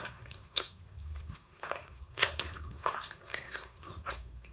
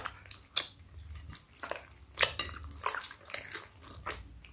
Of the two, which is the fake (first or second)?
first